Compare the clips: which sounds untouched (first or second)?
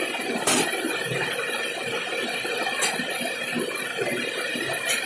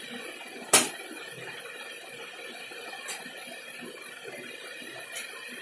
second